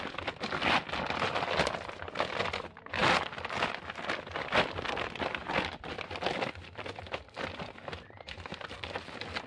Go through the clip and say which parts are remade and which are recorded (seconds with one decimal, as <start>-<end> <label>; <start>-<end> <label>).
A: 0.0-9.5 recorded